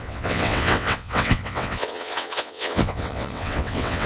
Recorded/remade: remade